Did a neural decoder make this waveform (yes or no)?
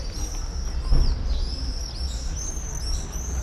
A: no